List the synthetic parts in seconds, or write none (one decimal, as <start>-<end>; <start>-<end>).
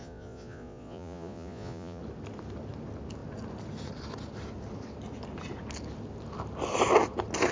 0.0-2.0